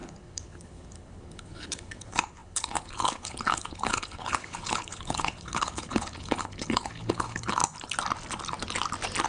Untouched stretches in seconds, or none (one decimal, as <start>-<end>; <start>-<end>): 7.6-9.3